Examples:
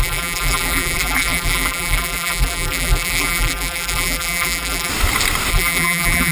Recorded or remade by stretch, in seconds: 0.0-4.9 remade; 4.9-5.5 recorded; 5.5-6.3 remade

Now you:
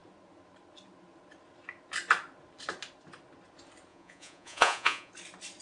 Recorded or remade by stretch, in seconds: 0.0-3.9 recorded; 3.9-5.1 remade; 5.1-5.6 recorded